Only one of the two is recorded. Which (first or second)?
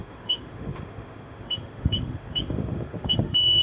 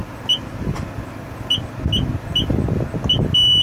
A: second